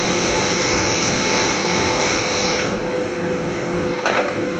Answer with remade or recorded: remade